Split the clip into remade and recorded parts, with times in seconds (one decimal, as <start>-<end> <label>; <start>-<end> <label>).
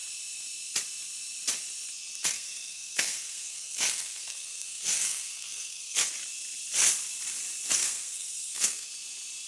0.0-2.2 recorded; 2.2-6.1 remade; 6.1-7.8 recorded; 7.8-8.9 remade; 8.9-9.5 recorded